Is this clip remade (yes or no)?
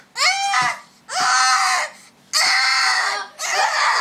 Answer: no